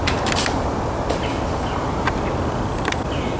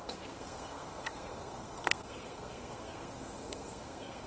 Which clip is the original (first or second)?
first